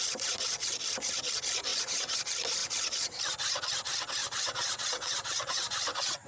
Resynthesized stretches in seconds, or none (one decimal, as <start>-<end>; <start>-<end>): 1.7-2.2; 2.6-3.2; 4.2-6.3